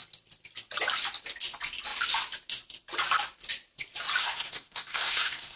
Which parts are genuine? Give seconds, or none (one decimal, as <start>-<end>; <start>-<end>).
0.0-4.2